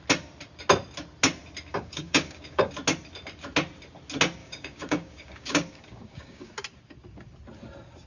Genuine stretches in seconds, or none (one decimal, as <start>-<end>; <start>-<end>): 0.0-1.7; 2.7-4.4; 6.5-8.1